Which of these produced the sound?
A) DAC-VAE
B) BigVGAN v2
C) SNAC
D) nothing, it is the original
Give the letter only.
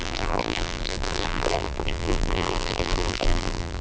B